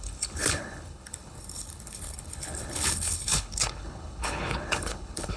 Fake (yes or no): yes